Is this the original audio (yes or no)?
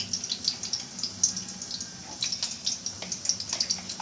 yes